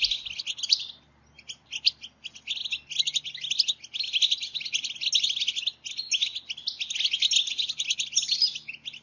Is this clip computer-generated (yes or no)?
no